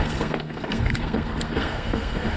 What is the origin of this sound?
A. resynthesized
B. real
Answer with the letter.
A